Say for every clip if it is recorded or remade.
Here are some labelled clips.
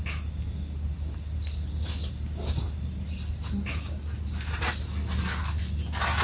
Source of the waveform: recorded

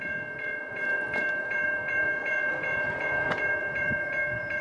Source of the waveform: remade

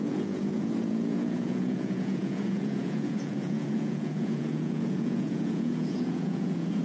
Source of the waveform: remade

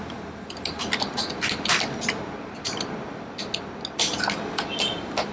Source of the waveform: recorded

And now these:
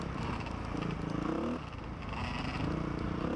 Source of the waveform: recorded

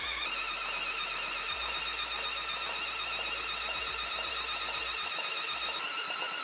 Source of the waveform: recorded